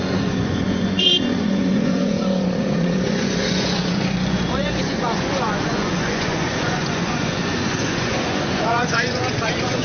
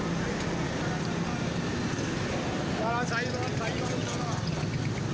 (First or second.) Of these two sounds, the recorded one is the second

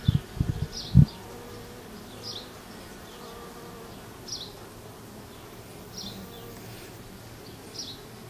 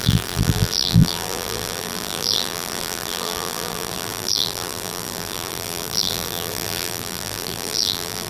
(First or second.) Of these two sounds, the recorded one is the first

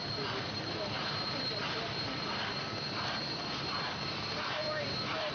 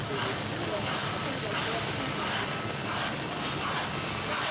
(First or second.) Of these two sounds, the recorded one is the second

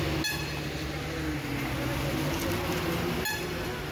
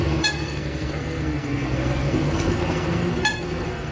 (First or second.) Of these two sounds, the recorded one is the first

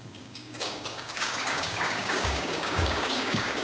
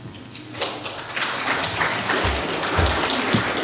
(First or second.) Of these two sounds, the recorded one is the second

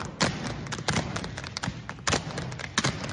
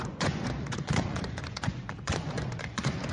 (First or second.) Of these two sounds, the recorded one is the first